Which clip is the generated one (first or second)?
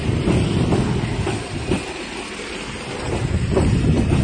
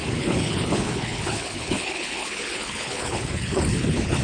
second